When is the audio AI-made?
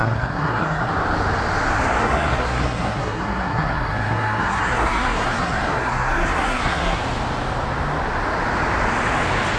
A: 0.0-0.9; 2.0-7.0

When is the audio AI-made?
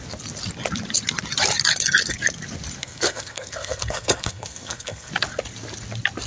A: 2.8-5.1